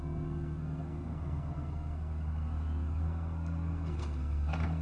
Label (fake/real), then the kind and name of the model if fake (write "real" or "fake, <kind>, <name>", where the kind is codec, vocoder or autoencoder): fake, codec, SNAC